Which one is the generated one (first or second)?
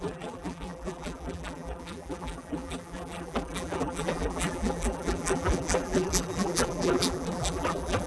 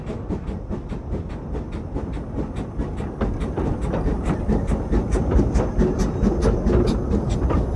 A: first